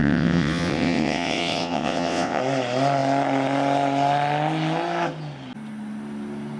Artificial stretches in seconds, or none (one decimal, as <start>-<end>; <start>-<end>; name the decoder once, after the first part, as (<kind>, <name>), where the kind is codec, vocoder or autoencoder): 0.0-2.4 (vocoder, WaveNeXt)